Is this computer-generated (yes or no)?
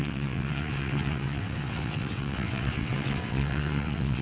yes